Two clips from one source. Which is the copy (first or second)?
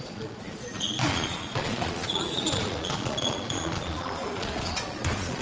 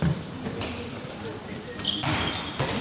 first